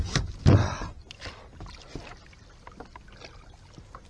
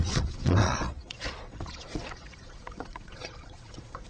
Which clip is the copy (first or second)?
second